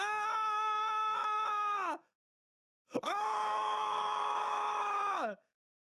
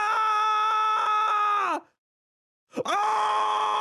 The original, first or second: second